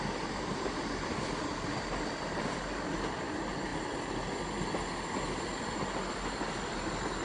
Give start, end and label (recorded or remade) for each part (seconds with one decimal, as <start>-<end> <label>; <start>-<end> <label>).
0.0-7.2 recorded